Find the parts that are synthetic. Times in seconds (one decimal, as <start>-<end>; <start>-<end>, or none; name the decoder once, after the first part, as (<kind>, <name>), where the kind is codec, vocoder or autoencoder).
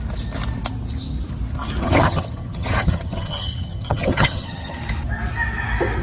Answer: 1.8-4.8 (vocoder, HiFi-GAN)